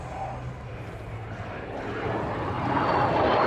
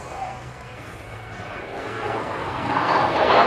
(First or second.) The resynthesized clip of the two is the second